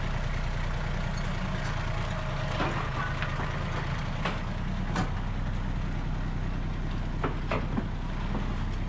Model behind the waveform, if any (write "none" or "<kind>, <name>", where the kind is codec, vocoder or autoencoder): none